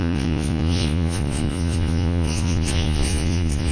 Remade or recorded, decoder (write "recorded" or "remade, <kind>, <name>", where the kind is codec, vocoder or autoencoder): remade, vocoder, Vocos